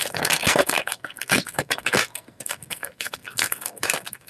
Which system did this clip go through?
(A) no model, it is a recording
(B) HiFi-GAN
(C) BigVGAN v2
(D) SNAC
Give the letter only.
D